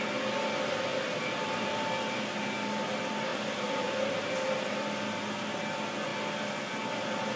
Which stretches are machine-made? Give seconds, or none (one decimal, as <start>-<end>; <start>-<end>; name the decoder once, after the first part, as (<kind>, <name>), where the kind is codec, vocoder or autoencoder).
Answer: 0.9-1.7 (vocoder, BigVGAN v2); 3.3-3.9